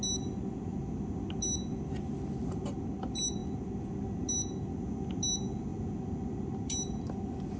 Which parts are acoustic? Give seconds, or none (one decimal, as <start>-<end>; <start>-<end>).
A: 0.0-7.6